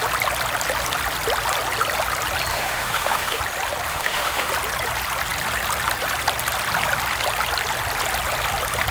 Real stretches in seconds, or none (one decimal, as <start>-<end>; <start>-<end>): 0.0-2.5; 3.4-3.9; 4.5-8.9

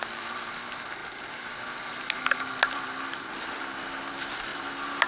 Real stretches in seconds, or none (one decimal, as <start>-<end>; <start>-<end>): 0.0-5.1

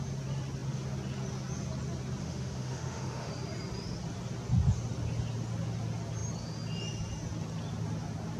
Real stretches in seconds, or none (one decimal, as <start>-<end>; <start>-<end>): 0.0-2.2; 3.3-8.4

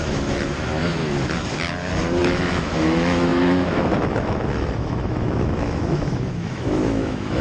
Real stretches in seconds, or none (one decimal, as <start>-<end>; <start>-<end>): 0.8-2.2

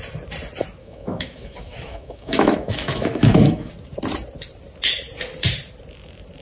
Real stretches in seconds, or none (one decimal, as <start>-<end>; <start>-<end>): 0.0-0.8; 3.7-6.4

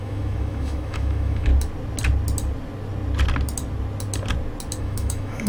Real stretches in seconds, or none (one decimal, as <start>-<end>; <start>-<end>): 1.5-4.8